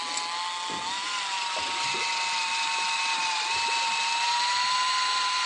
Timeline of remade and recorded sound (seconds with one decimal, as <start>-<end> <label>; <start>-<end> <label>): 0.0-5.5 recorded